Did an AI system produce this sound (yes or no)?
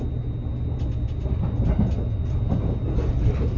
no